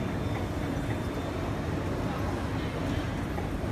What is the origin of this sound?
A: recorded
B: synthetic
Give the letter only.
A